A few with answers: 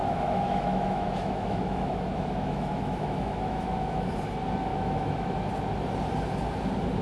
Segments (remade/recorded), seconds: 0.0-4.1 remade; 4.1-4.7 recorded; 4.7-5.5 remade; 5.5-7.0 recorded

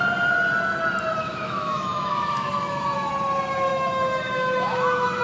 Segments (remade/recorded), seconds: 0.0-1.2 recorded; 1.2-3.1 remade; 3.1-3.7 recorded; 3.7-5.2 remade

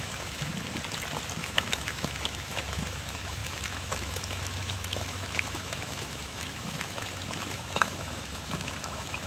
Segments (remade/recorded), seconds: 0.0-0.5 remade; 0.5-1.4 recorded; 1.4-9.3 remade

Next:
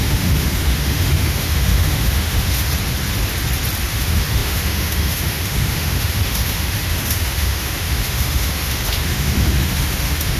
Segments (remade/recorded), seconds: 0.0-2.7 remade; 2.7-3.9 recorded; 3.9-10.4 remade

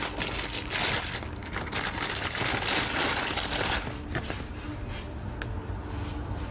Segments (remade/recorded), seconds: 0.0-6.5 recorded